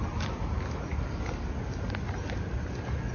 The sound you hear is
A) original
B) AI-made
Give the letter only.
A